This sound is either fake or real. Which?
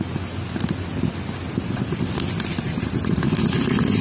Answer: real